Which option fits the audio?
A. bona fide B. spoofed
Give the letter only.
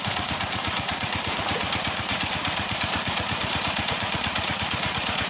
B